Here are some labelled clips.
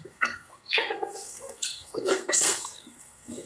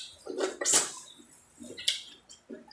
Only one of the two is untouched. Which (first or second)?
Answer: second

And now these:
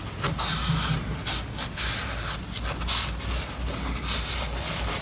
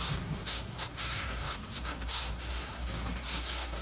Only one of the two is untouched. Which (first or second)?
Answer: first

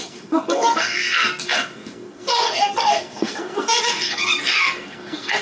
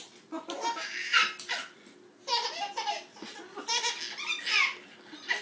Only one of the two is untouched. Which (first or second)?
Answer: second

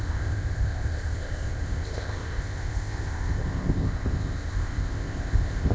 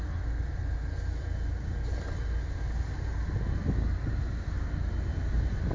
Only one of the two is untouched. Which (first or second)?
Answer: second